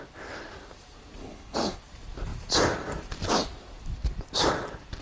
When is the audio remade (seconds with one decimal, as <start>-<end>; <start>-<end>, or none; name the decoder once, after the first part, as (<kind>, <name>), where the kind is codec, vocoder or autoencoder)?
1.2-1.8 (codec, HILCodec)